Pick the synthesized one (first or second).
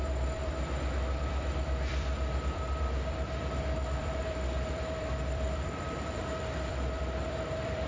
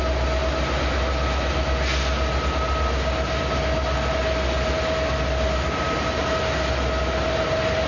first